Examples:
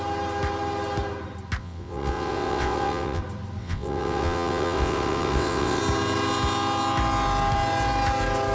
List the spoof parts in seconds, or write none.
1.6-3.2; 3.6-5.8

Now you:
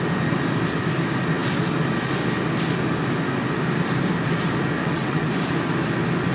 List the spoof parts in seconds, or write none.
4.8-5.3

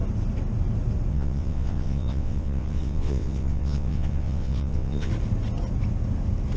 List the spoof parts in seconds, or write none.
1.1-5.1

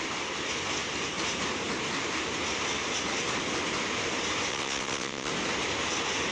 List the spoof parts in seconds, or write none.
4.5-5.3

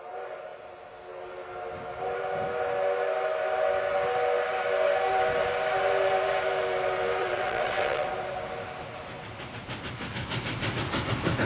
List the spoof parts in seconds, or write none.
7.2-8.1

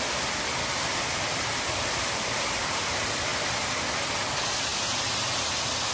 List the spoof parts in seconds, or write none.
none

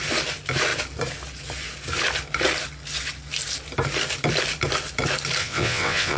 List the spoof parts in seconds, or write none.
5.4-6.2